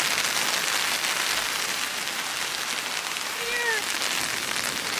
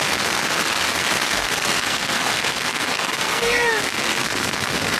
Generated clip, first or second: second